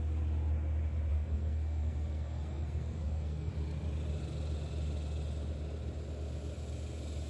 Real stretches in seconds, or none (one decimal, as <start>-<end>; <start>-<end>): 0.0-1.1; 3.5-7.3